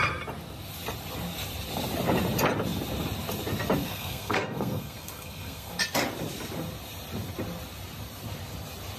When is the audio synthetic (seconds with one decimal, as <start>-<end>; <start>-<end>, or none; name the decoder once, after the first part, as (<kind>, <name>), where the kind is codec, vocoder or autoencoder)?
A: 3.8-5.7 (codec, SNAC)